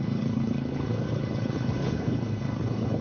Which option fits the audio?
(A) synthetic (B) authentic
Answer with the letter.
A